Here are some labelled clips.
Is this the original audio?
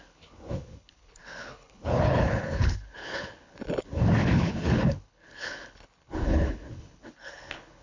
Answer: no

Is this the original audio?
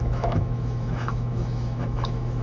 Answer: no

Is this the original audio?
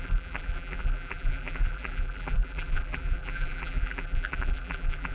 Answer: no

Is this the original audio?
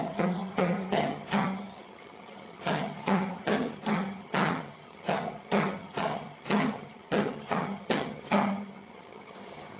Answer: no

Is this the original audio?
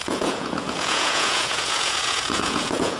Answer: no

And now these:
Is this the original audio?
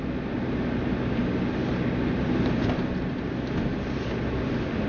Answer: yes